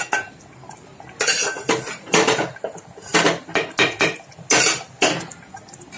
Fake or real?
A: real